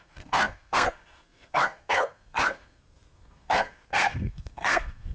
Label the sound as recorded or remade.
remade